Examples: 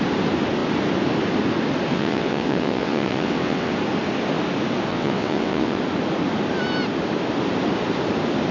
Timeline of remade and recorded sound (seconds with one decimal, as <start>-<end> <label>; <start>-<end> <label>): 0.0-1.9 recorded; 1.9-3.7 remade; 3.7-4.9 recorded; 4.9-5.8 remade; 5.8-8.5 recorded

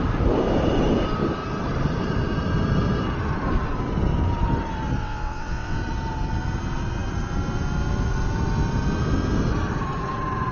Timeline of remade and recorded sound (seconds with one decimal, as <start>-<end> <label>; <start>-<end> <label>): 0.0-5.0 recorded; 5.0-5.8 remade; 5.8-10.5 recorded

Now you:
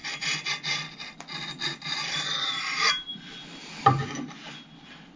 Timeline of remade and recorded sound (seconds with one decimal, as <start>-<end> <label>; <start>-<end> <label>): 0.0-5.2 recorded